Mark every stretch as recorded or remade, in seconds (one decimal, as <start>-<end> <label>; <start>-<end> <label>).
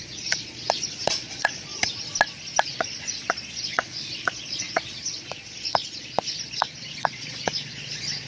0.0-1.7 remade; 1.7-2.6 recorded; 2.6-8.3 remade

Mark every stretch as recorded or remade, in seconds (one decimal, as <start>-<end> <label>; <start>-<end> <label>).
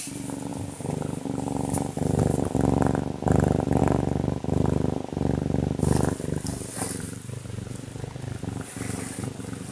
0.0-9.7 recorded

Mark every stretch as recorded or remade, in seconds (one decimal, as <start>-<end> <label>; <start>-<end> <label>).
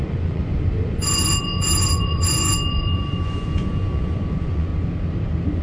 0.0-4.7 remade; 4.7-5.6 recorded